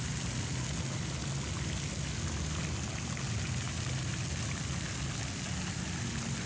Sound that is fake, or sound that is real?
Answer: real